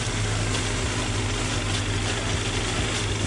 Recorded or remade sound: recorded